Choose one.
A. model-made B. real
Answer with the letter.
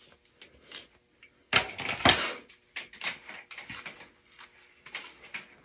B